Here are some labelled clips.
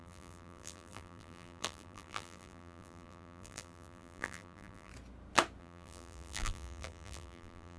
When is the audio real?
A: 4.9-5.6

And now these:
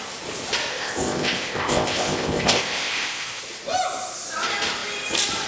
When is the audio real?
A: 0.0-0.7; 3.4-5.5

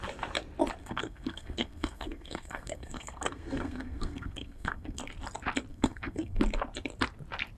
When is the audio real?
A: 0.0-0.8; 5.0-5.7; 6.4-7.6

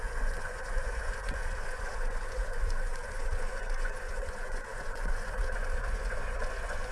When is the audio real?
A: none

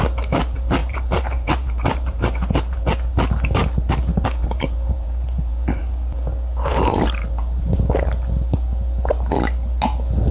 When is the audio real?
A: 0.0-0.8; 2.8-4.4; 5.8-6.7; 7.6-10.3